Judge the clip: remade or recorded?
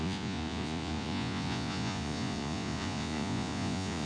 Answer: remade